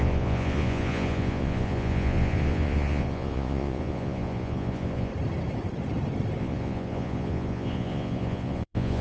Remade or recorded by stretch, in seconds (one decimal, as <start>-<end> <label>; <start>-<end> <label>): 0.0-5.1 remade; 5.1-6.4 recorded; 6.4-9.0 remade